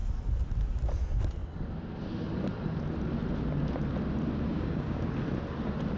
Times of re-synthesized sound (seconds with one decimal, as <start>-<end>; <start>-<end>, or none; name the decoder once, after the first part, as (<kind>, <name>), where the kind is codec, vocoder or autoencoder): 4.5-5.1 (codec, DAC)

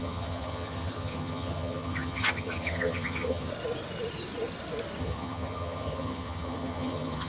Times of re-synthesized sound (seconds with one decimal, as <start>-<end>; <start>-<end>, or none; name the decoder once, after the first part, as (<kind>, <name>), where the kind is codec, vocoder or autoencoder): 0.0-3.5 (vocoder, HiFi-GAN); 5.0-7.3

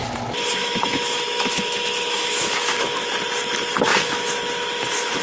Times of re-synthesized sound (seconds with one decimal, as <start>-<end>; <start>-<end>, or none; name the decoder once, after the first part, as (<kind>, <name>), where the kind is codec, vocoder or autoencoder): 0.5-3.0 (autoencoder, DAC-VAE); 3.5-5.2

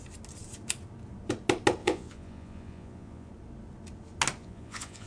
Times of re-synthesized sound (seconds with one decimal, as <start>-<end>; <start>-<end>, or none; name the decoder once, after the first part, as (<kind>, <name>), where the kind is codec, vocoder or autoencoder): 1.8-3.3 (vocoder, Vocos); 4.4-5.1

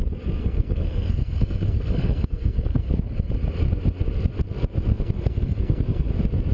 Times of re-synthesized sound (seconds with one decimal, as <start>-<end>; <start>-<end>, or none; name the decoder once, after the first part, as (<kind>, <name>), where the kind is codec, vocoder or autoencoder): 0.4-3.3 (codec, SNAC); 4.9-6.1